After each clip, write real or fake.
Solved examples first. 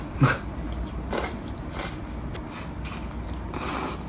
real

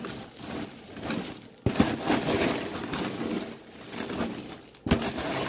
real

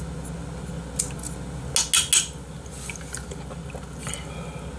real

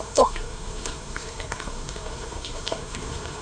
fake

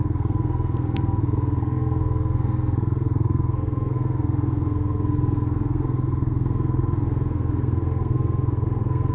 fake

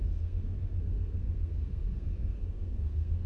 fake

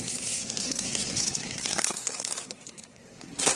fake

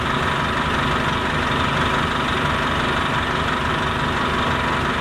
real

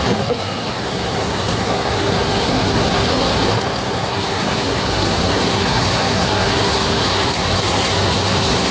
fake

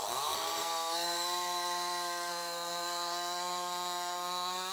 fake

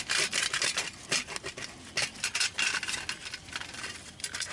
real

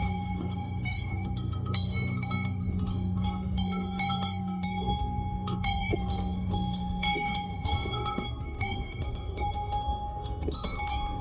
fake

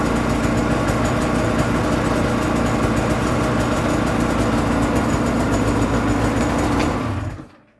real